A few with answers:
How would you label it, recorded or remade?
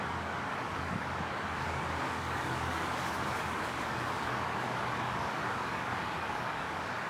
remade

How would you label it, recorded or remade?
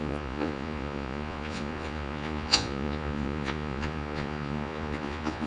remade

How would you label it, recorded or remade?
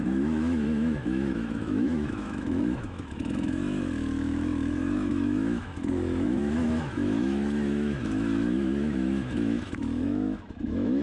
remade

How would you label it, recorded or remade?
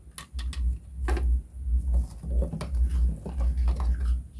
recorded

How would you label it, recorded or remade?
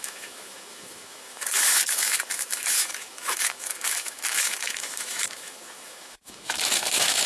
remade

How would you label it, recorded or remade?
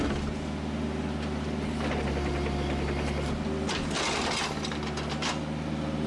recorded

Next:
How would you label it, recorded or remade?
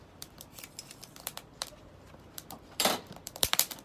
remade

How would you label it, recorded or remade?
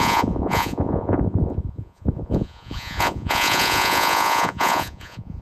remade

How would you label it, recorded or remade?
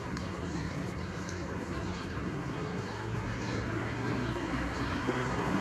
remade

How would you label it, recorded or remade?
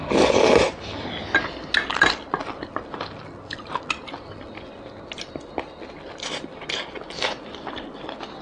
recorded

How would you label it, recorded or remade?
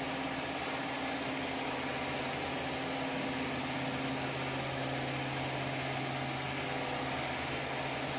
recorded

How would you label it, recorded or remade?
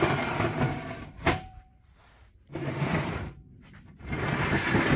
remade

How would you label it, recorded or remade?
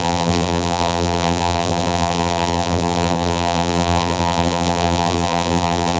remade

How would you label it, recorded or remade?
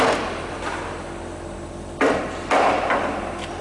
recorded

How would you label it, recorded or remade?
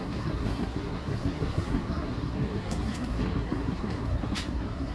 remade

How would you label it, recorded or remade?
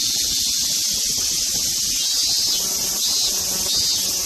recorded